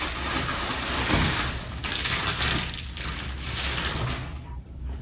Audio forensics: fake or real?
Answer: real